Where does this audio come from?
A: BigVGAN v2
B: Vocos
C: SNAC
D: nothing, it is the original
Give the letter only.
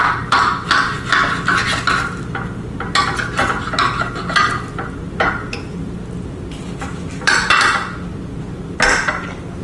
D